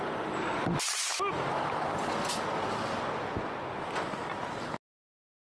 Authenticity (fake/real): real